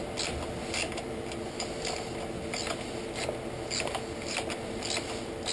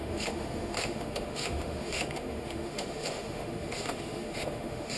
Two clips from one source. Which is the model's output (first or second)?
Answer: second